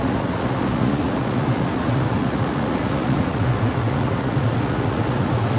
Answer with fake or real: fake